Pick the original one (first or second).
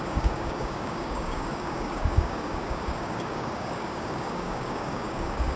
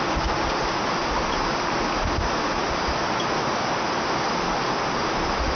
second